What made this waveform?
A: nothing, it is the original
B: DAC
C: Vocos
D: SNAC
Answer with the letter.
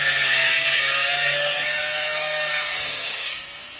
D